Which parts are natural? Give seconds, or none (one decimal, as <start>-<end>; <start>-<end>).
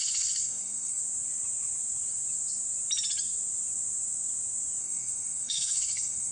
1.0-4.8